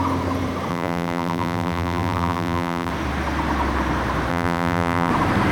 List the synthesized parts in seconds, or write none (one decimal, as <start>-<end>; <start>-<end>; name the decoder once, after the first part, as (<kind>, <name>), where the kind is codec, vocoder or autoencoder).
0.7-2.9 (vocoder, BigVGAN v2); 4.3-5.1